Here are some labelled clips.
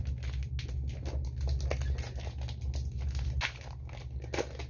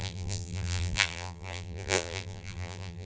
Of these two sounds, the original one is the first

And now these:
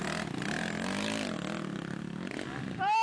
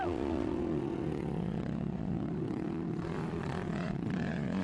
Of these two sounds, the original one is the first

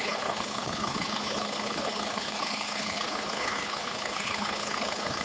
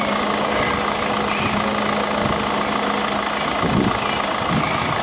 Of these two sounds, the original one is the second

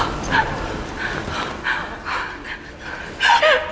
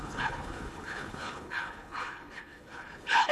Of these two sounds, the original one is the first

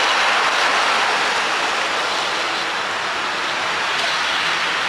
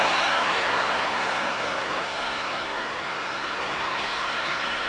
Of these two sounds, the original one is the first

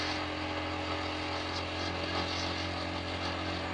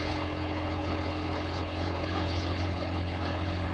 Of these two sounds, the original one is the first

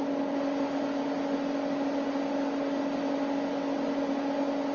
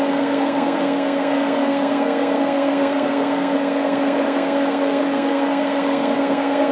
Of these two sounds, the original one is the first